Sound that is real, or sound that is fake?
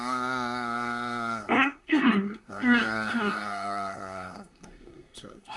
fake